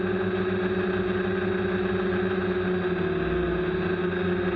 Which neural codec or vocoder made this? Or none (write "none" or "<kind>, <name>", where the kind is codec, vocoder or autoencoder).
none